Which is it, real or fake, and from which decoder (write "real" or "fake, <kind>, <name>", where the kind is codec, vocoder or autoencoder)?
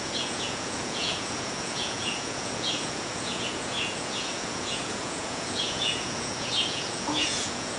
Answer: fake, vocoder, Vocos